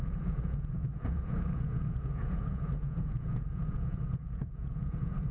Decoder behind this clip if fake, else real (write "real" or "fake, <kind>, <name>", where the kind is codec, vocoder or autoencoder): fake, vocoder, Vocos